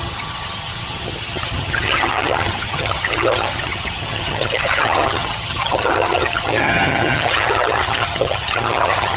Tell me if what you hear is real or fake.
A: fake